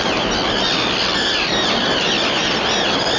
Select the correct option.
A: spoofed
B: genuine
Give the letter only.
B